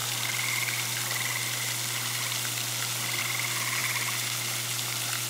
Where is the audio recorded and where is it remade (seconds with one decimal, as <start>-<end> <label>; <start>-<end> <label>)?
0.0-5.3 recorded